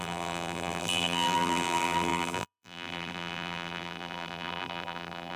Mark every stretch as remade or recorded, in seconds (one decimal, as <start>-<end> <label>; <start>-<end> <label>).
0.0-5.4 remade

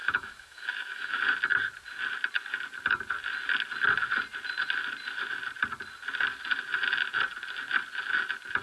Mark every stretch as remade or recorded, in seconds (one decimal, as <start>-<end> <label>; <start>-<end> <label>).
0.0-1.2 remade; 1.2-8.6 recorded